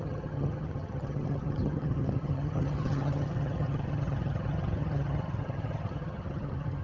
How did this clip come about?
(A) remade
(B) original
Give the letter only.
A